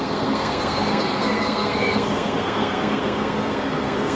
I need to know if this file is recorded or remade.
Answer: remade